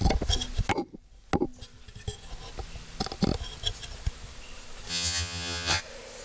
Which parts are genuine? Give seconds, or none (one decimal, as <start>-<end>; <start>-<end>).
0.0-4.9; 5.8-6.2